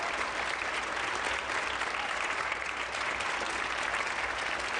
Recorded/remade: recorded